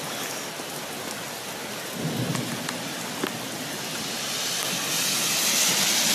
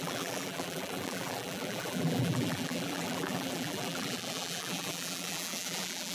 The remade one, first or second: second